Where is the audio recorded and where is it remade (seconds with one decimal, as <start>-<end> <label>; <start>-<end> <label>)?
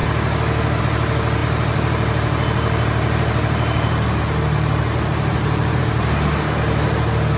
0.0-1.4 recorded; 1.4-5.8 remade; 5.8-7.4 recorded